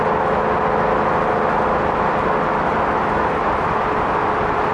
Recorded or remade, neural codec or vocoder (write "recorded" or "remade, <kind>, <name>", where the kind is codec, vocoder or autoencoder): recorded